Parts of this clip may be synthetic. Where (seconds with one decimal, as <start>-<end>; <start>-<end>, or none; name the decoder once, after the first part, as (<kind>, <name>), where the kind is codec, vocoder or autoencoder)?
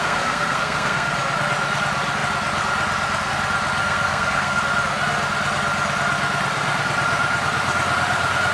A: 0.0-1.1 (codec, SNAC); 3.8-4.6